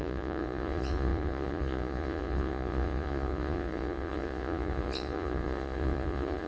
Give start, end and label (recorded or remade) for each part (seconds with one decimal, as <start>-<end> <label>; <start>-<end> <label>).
0.0-6.5 remade